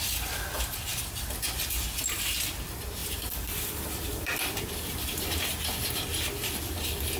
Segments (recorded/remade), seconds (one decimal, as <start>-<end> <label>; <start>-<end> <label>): 0.0-3.0 recorded; 3.0-5.8 remade; 5.8-7.2 recorded